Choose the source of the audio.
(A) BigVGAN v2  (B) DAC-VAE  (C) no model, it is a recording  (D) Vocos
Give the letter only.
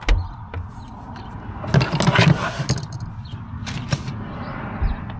C